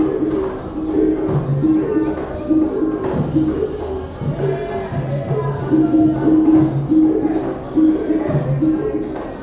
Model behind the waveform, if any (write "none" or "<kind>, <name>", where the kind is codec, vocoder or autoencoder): none